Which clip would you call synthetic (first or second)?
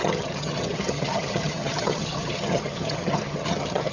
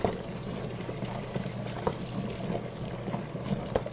first